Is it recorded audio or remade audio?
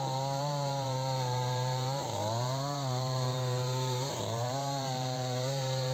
remade